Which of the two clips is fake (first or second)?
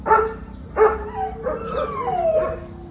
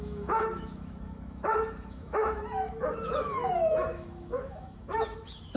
second